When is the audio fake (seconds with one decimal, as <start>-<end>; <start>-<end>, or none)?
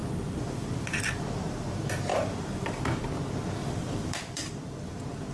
0.0-0.7; 2.1-2.8; 3.6-4.6